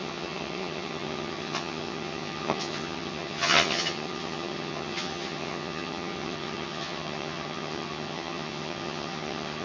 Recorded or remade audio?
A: remade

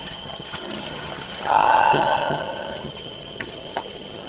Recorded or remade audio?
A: remade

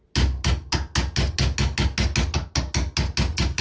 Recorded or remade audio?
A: recorded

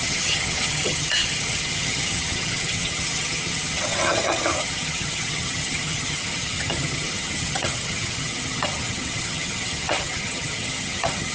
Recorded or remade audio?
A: remade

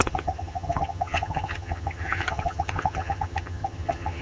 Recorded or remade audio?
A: remade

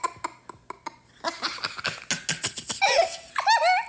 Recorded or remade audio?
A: recorded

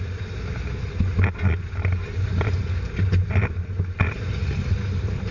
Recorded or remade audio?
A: recorded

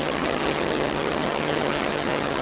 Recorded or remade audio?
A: remade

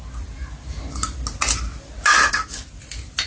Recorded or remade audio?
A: recorded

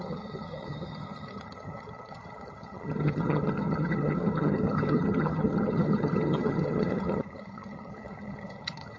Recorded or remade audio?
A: remade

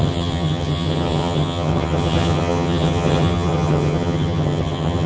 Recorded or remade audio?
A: remade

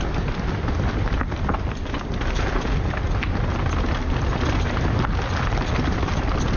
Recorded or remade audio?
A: recorded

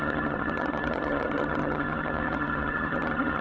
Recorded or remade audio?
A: remade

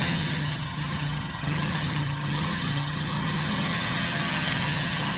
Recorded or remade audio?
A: remade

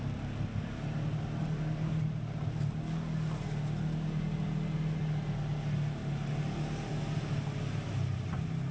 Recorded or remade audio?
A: recorded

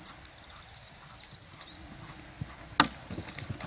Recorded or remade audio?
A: recorded